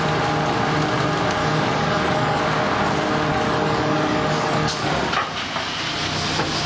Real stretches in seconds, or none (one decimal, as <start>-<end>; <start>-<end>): 0.0-1.4; 2.4-3.3; 4.9-6.7